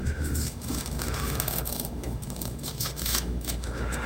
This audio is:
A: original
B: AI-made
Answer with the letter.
B